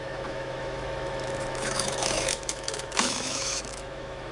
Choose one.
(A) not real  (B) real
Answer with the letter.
A